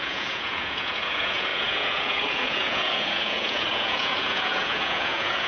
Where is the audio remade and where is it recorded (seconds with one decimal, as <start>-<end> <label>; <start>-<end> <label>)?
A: 0.0-5.5 remade